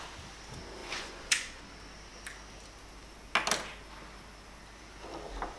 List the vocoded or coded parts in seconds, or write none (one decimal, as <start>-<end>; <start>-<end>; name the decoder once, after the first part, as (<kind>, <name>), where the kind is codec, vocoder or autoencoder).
0.8-1.6 (vocoder, Vocos)